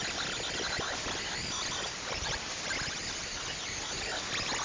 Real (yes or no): yes